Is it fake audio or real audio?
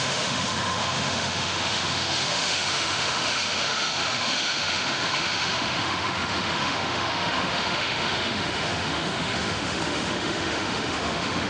fake